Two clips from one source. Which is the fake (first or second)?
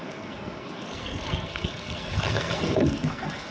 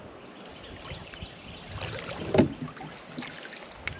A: first